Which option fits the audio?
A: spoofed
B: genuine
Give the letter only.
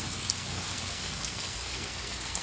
A